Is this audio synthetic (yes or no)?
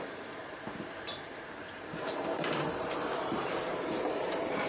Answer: yes